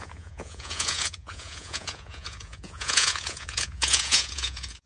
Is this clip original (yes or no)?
no